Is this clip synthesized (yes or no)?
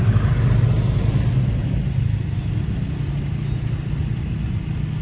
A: no